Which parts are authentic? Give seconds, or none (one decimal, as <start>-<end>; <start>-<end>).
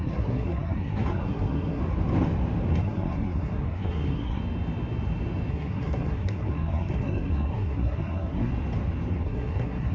1.8-2.7; 4.4-5.5; 8.5-9.1